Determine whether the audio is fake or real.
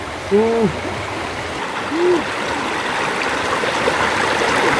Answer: real